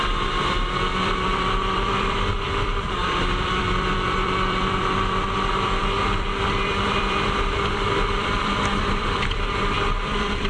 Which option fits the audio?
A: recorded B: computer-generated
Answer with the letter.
B